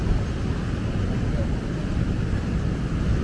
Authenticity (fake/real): real